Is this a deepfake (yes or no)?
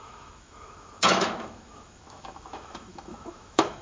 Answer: yes